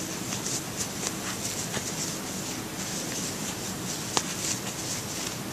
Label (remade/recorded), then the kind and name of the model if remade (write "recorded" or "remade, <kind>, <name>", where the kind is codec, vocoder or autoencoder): recorded